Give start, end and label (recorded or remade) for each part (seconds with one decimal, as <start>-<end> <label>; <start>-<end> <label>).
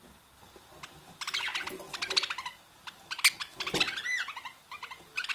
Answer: 0.0-5.3 recorded